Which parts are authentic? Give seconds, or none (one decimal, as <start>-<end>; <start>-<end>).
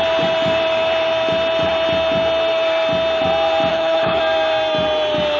0.0-3.7; 4.2-5.4